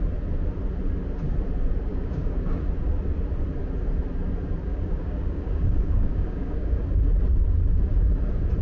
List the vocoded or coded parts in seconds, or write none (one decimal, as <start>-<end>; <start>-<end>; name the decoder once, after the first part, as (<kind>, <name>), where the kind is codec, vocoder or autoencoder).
1.9-2.6 (codec, DAC); 4.7-6.8